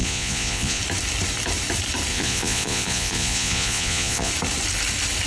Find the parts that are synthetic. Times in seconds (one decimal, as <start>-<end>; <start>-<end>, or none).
0.0-0.8; 2.1-4.3